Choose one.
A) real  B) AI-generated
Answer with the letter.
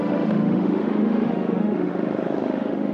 B